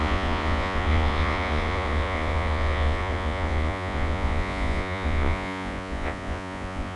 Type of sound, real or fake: fake